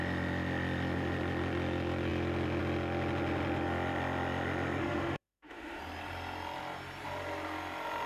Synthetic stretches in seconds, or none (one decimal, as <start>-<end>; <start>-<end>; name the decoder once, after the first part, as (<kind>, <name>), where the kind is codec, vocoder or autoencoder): 4.8-5.8 (autoencoder, DAC-VAE)